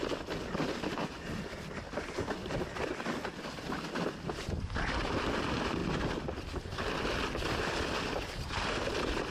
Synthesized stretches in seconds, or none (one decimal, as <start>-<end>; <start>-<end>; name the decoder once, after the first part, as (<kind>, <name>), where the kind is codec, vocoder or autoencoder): none